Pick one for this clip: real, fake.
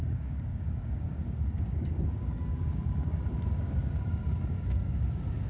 fake